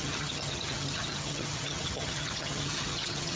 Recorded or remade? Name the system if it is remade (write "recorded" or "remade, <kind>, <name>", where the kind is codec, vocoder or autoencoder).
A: remade, vocoder, HiFi-GAN